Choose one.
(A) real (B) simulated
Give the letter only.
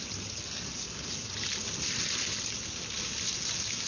A